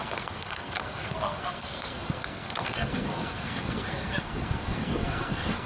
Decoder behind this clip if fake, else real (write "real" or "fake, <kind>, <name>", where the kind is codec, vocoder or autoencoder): fake, codec, SNAC